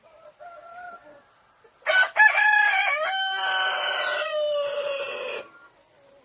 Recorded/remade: recorded